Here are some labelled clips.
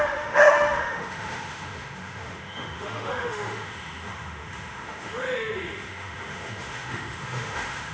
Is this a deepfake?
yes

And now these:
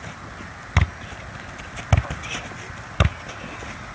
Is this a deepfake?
no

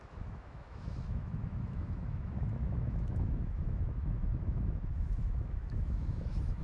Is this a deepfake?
yes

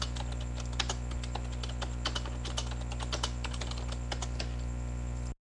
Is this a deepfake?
no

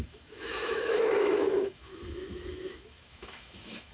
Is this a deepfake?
yes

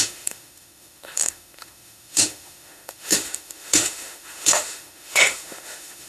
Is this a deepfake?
yes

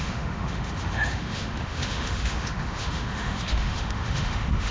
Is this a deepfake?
yes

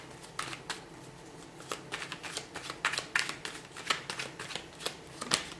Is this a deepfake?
no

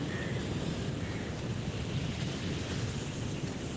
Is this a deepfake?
no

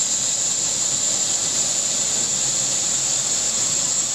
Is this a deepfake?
no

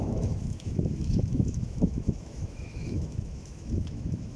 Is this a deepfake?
yes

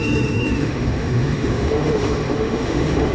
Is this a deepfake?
yes